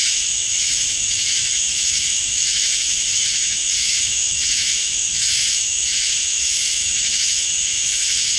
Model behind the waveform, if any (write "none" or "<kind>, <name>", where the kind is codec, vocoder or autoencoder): autoencoder, DAC-VAE